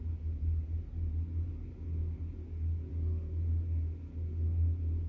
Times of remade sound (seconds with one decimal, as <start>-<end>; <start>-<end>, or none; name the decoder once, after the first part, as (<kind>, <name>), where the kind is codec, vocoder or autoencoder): none